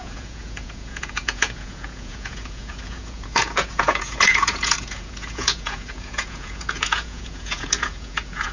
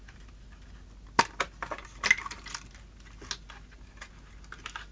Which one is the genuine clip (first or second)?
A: second